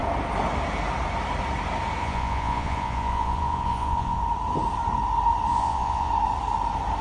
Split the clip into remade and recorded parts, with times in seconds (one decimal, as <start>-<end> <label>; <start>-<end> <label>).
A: 0.0-2.0 recorded; 2.0-4.2 remade; 4.2-5.5 recorded; 5.5-6.1 remade; 6.1-7.0 recorded